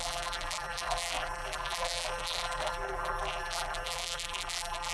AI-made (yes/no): yes